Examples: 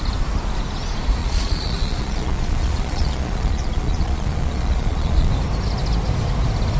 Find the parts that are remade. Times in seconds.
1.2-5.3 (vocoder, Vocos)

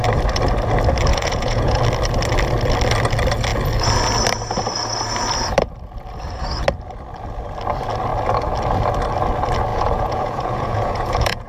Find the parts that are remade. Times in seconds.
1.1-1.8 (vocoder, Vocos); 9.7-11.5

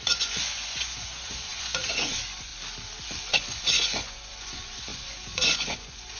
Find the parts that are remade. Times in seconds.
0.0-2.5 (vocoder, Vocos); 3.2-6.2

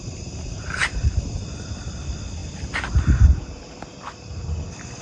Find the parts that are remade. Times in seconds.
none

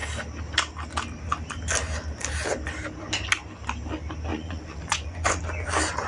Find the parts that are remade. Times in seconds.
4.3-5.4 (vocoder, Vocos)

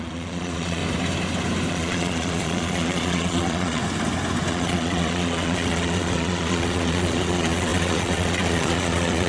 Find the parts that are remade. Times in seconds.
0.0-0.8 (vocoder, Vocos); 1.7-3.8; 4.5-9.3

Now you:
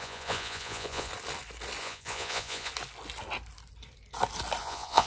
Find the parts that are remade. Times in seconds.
0.0-1.1 (vocoder, Vocos); 1.8-2.7; 4.6-5.1

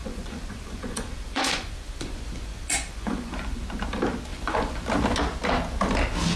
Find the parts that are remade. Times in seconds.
0.0-3.6 (vocoder, Vocos); 4.3-4.8